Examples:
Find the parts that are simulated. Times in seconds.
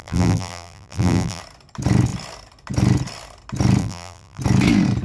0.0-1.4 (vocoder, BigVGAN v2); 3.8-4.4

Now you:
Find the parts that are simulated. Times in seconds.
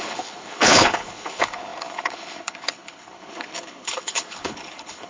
0.0-5.1 (codec, HILCodec)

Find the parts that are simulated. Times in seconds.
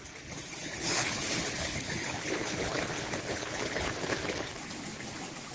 0.6-3.9 (codec, HILCodec)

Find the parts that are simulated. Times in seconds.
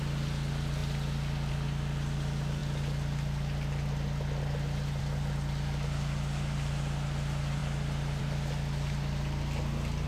none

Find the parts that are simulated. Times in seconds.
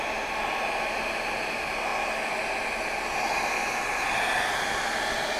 none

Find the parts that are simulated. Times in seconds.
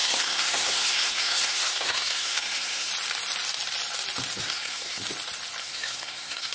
0.0-2.9 (codec, SNAC); 4.4-5.0; 5.6-6.5